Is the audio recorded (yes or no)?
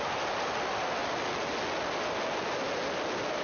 yes